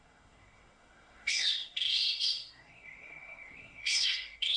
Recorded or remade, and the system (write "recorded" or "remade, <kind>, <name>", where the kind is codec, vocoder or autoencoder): remade, codec, SNAC